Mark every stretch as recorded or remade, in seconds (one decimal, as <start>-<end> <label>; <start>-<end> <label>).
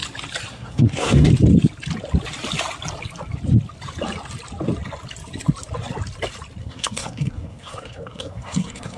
0.0-0.5 recorded; 0.5-1.3 remade; 1.3-6.6 recorded; 6.6-9.0 remade